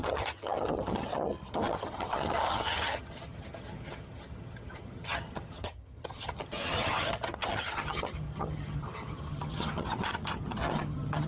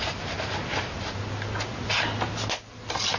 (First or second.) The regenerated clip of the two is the first